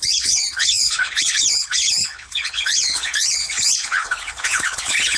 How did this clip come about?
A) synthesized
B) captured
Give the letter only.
A